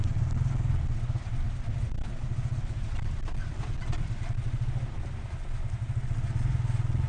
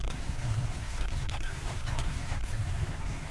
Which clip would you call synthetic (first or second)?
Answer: second